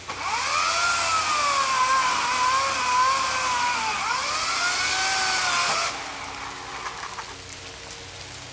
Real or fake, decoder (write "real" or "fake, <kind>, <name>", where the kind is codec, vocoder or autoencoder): real